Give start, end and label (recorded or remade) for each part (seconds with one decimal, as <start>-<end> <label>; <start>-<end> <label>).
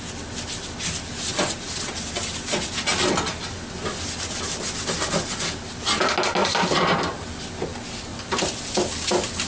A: 0.0-6.4 recorded; 6.4-7.3 remade; 7.3-8.1 recorded; 8.1-8.6 remade; 8.6-9.5 recorded